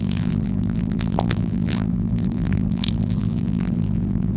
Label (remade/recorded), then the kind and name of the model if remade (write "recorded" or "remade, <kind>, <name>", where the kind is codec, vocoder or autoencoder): remade, vocoder, BigVGAN v2